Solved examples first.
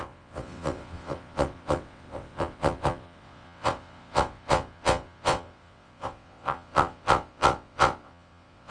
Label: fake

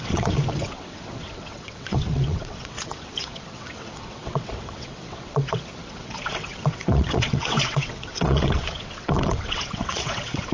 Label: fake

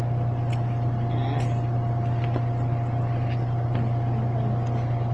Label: real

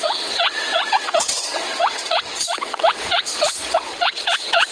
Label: fake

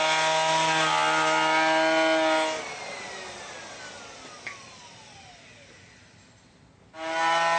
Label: real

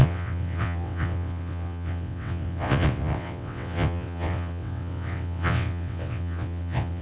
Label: fake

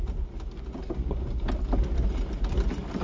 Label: real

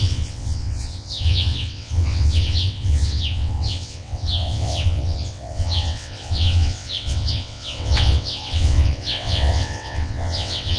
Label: fake